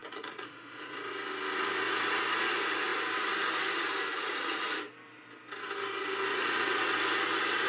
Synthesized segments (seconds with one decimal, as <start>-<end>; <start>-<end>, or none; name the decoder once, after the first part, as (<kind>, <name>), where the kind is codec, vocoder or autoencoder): 0.0-1.1 (vocoder, Vocos); 4.1-4.8; 6.3-6.9